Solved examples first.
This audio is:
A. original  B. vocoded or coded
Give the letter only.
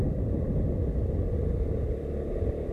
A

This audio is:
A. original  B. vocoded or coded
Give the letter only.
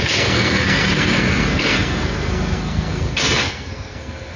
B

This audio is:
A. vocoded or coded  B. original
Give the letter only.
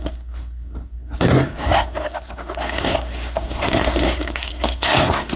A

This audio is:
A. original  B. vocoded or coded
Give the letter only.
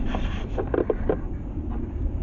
B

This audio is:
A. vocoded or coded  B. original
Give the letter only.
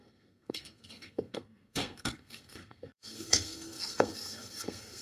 A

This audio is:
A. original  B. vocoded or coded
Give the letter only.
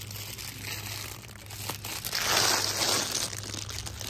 A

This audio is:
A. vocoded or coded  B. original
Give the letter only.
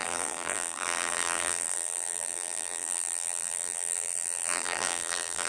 A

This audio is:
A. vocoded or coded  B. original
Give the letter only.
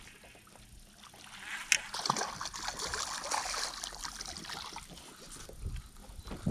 B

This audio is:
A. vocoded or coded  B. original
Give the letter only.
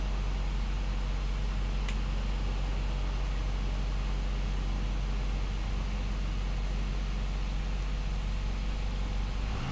B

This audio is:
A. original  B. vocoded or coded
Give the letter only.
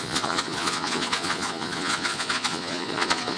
B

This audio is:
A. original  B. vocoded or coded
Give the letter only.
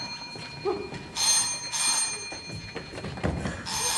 A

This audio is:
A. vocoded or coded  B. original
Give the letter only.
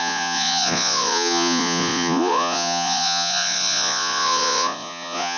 A